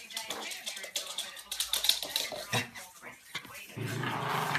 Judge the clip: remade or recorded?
recorded